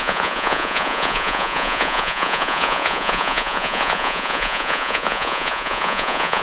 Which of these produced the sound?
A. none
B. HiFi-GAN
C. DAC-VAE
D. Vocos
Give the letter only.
D